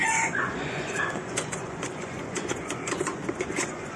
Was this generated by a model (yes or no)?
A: yes